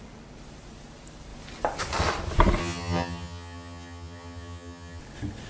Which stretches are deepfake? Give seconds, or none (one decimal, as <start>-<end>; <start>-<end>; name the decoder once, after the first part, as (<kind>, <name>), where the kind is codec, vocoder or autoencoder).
2.6-5.0 (vocoder, HiFi-GAN)